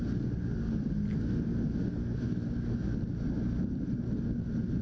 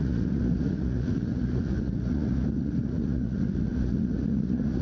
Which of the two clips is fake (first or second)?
second